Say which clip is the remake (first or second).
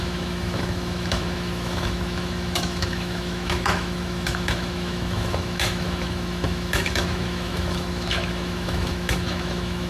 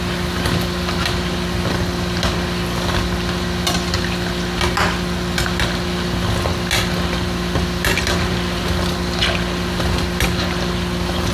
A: first